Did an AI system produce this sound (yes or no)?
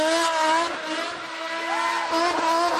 no